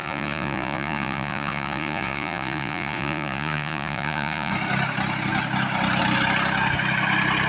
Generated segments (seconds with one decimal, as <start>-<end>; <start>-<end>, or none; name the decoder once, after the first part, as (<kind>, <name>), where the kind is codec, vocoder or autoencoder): 0.0-4.5 (vocoder, Vocos)